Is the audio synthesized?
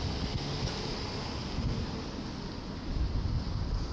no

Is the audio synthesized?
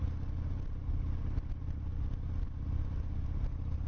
no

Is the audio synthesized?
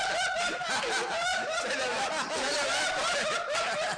no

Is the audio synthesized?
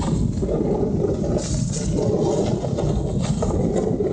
no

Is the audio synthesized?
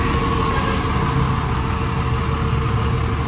no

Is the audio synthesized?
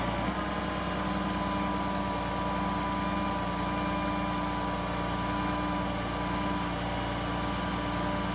no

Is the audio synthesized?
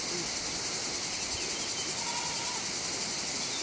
no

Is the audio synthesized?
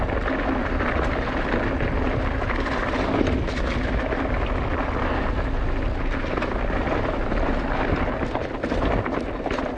no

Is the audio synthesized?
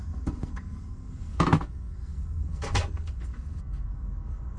yes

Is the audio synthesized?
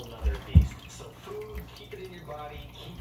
no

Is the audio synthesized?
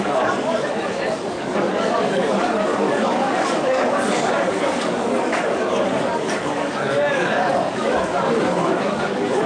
yes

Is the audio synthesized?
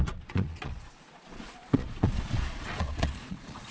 yes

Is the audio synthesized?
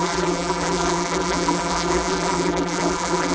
yes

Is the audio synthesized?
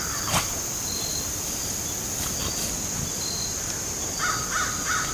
no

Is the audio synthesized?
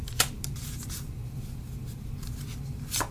no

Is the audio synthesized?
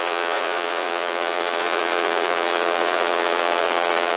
yes